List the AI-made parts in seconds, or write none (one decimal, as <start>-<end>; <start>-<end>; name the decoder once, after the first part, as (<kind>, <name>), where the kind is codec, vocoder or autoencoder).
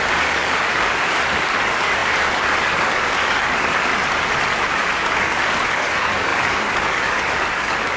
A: 0.0-3.9 (codec, DAC); 4.6-8.0